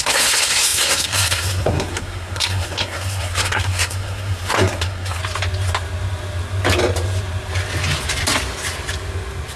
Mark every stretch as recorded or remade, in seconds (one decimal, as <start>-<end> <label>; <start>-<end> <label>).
0.0-5.2 remade; 5.2-9.6 recorded